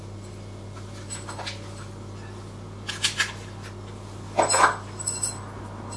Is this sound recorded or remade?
recorded